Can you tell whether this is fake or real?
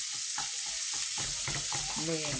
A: real